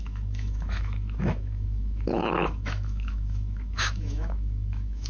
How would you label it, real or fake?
fake